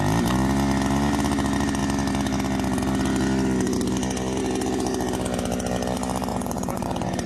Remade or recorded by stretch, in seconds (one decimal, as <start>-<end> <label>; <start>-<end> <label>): 0.0-6.3 recorded; 6.3-7.3 remade